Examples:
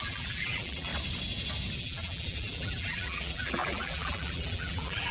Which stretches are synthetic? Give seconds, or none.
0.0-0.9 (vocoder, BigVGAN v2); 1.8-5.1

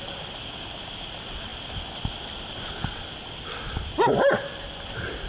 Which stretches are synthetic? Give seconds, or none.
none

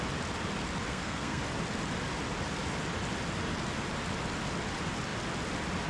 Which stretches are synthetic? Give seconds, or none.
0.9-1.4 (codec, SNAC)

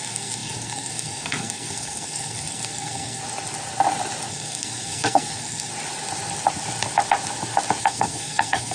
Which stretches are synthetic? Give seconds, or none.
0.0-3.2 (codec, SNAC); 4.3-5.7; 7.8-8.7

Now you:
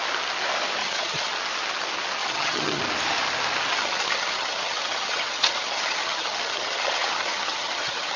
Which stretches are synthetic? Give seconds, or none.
0.8-1.3 (vocoder, HiFi-GAN); 2.2-2.8; 3.7-8.2

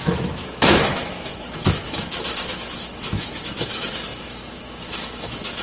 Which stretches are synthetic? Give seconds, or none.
0.0-5.6 (autoencoder, DAC-VAE)

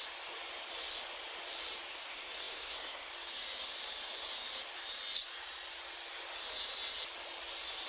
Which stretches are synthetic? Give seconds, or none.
1.9-3.1 (codec, SNAC)